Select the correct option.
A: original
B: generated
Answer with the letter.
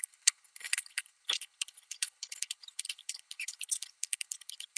B